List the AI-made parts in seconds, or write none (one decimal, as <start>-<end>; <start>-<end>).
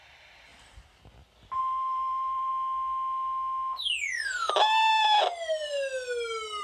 0.0-0.5; 1.6-2.5